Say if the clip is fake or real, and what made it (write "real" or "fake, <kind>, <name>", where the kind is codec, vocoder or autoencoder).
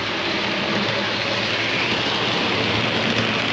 real